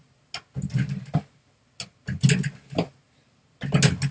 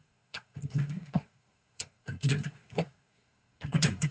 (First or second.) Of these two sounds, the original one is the first